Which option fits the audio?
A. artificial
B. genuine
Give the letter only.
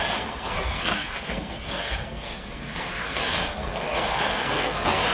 A